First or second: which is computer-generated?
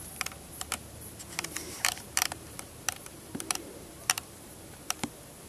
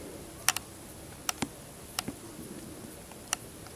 first